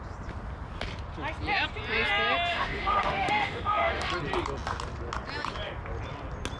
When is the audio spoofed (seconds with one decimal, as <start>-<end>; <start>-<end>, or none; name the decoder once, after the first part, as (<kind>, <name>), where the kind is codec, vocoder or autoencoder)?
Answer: 2.5-4.1 (autoencoder, DAC-VAE)